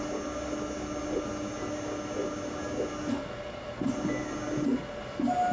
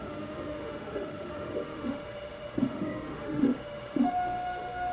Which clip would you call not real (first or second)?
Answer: second